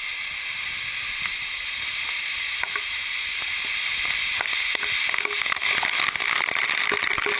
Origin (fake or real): real